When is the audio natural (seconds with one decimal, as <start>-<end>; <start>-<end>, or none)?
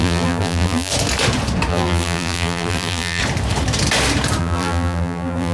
0.9-1.7; 3.2-4.4